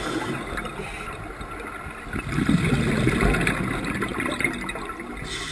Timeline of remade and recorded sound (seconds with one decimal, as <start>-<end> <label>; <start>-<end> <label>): 0.0-5.5 recorded